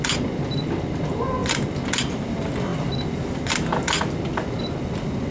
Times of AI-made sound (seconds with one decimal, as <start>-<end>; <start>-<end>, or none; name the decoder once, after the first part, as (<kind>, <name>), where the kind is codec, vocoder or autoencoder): none